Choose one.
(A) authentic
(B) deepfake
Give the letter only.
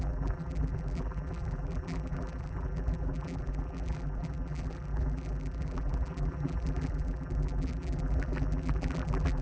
B